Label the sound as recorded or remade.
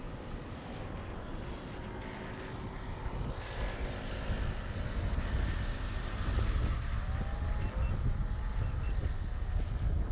recorded